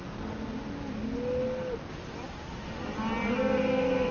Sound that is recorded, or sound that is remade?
recorded